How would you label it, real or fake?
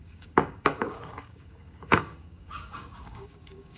fake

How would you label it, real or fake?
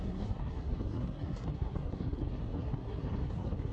fake